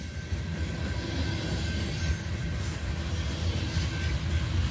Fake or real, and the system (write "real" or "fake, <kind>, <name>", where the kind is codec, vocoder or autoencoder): real